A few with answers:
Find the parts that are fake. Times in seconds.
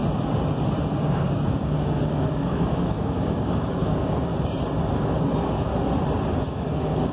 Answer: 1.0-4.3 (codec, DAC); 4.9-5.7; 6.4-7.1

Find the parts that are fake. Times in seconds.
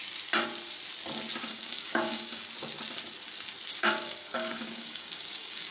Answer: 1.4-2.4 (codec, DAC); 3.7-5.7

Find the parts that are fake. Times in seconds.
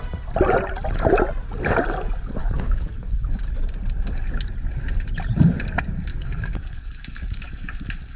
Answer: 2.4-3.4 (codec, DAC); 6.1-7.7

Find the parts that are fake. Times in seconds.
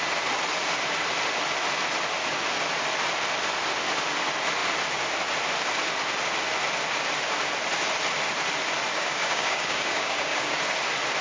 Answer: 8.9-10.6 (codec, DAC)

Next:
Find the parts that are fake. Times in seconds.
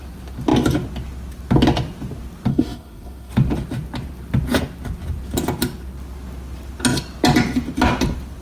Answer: 2.5-3.3 (codec, DAC)